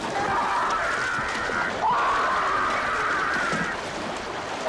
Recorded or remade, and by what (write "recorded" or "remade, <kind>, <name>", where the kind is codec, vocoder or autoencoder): recorded